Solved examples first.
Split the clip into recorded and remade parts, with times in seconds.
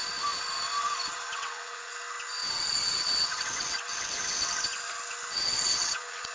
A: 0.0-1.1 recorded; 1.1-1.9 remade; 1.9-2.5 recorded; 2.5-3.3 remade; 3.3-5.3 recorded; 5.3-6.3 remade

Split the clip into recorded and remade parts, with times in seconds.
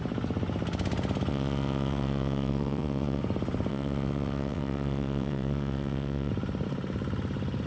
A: 0.0-1.3 recorded; 1.3-3.2 remade; 3.2-3.7 recorded; 3.7-6.3 remade; 6.3-7.7 recorded